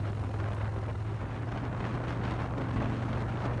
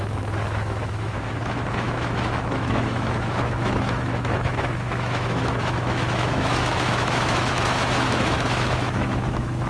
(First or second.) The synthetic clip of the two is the second